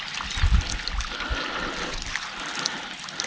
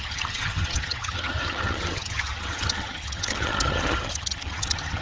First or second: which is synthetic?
second